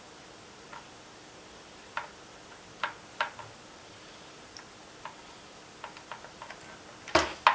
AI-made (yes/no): no